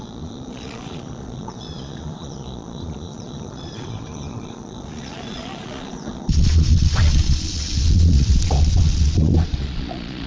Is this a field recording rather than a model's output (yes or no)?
no